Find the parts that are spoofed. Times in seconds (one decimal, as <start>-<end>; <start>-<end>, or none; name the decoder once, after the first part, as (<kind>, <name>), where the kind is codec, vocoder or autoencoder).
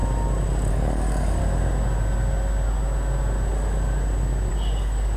0.7-1.4 (codec, DAC); 4.5-5.2